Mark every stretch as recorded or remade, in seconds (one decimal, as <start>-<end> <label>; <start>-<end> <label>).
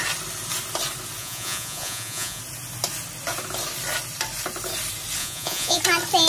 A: 0.0-1.2 recorded; 1.2-2.4 remade; 2.4-5.2 recorded; 5.2-5.8 remade; 5.8-6.3 recorded